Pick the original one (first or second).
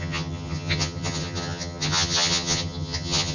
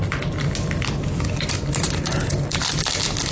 second